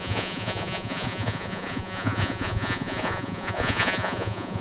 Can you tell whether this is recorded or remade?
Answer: remade